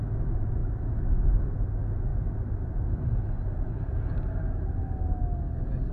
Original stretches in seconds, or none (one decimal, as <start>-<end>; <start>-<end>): 0.0-5.9